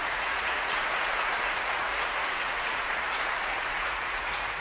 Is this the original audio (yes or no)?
no